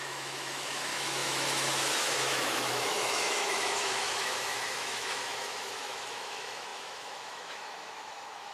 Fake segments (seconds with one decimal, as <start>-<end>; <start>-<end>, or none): 0.0-8.5